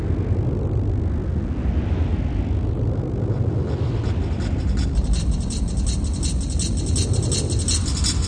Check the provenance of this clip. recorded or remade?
recorded